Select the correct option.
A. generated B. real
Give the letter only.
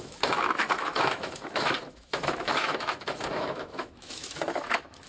A